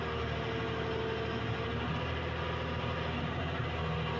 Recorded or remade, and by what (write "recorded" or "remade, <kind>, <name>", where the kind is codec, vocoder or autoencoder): recorded